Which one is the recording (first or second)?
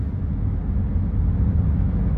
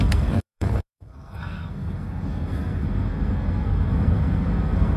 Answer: first